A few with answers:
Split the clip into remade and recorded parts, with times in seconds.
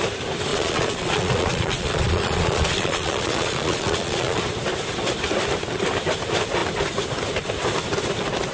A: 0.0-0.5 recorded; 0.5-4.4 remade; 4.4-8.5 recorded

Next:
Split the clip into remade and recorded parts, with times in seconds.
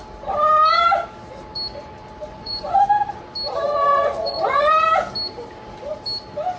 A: 0.0-2.3 recorded; 2.3-2.8 remade; 2.8-3.9 recorded; 3.9-4.7 remade; 4.7-6.6 recorded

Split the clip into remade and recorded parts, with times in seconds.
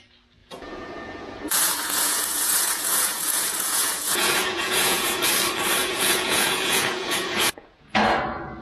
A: 0.0-0.4 recorded; 0.4-5.3 remade; 5.3-5.8 recorded; 5.8-8.0 remade; 8.0-8.6 recorded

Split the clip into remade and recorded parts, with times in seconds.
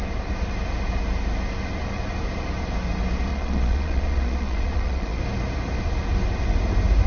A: 0.0-3.3 recorded; 3.3-5.2 remade; 5.2-7.1 recorded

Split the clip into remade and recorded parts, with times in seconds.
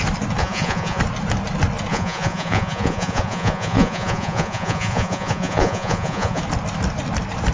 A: 0.0-0.4 recorded; 0.4-1.0 remade; 1.0-1.9 recorded; 1.9-6.4 remade; 6.4-7.5 recorded